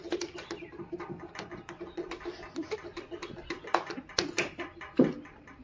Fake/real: real